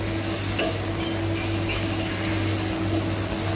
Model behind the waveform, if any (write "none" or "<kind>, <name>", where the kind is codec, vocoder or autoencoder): none